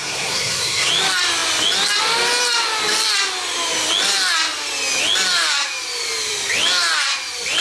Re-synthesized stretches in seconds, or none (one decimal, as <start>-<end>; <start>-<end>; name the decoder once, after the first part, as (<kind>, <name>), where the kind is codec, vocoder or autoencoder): 0.0-0.9 (codec, SNAC)